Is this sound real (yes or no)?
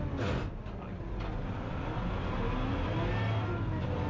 yes